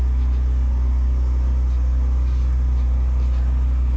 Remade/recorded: recorded